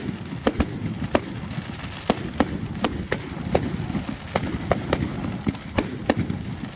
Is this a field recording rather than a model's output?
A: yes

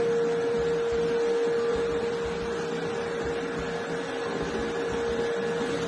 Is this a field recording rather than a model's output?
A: yes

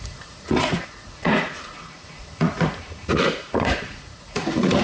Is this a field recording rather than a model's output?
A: no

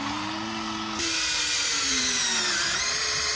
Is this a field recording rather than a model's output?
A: yes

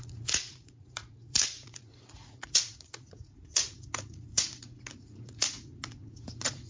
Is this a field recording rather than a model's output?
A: no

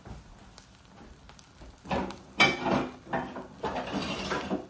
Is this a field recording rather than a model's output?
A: yes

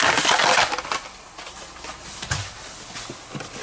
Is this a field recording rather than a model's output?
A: yes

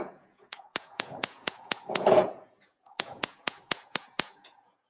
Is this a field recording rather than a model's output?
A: no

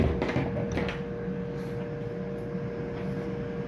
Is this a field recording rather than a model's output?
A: yes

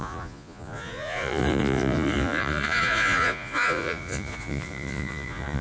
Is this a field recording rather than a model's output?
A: no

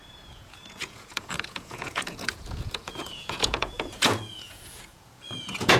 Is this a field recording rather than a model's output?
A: no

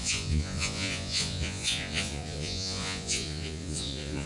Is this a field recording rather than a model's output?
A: no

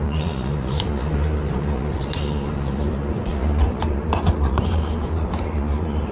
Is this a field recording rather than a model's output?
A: no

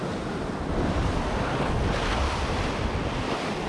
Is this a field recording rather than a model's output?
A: yes